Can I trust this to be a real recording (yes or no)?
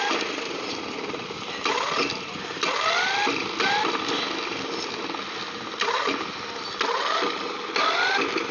yes